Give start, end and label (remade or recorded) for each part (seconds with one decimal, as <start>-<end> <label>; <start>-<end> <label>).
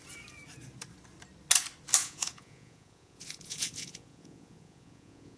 0.0-2.0 recorded; 2.0-5.4 remade